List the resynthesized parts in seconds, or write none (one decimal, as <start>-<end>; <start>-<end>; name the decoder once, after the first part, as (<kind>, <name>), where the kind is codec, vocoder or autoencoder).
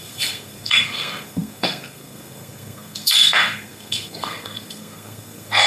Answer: 0.0-5.7 (codec, SNAC)